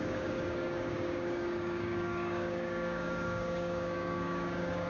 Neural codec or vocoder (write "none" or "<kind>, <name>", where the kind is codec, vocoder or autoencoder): codec, DAC